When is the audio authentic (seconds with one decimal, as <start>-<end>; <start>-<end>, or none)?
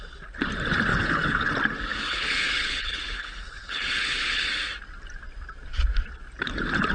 0.0-0.9; 1.5-1.9; 4.5-6.9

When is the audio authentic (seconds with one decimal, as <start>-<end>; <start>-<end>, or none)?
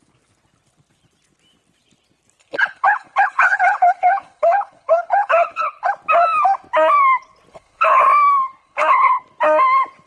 0.0-2.4; 5.9-7.5; 8.0-8.6; 9.2-10.1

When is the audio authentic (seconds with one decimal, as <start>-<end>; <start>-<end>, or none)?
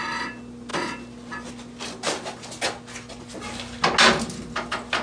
0.0-5.0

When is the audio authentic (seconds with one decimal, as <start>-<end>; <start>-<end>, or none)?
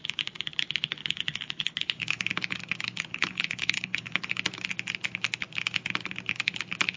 0.0-1.0; 2.3-3.1; 4.3-7.0